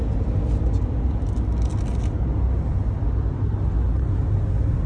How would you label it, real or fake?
real